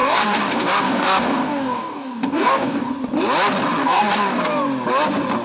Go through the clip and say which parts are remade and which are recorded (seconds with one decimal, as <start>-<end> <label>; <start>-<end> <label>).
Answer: 0.0-2.9 remade; 2.9-3.8 recorded; 3.8-4.4 remade; 4.4-5.4 recorded